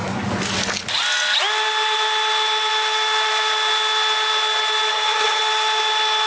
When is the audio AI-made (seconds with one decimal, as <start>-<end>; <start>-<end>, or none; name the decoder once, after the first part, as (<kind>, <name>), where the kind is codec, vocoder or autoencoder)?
4.9-5.4 (vocoder, HiFi-GAN)